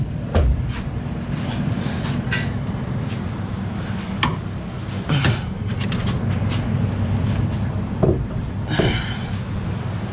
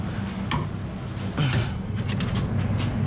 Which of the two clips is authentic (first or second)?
second